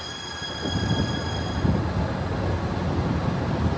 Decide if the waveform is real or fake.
real